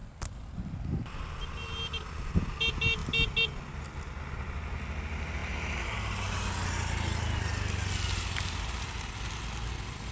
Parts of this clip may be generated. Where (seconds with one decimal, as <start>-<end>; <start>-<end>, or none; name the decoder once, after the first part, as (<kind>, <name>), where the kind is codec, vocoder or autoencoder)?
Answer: none